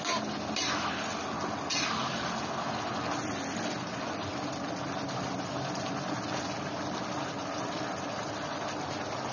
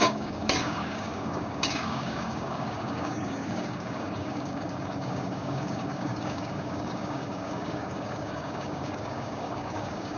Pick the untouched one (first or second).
first